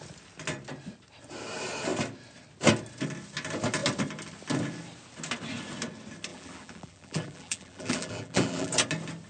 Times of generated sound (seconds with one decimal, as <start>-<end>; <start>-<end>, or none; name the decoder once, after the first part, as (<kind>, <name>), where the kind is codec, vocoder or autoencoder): 6.3-8.7 (vocoder, BigVGAN v2)